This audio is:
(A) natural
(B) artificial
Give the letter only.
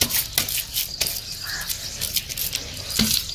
A